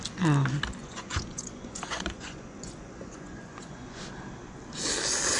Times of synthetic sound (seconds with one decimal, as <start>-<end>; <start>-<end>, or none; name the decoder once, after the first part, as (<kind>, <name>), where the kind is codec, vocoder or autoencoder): 0.8-4.0 (vocoder, Vocos)